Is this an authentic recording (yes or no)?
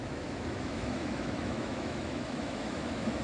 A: no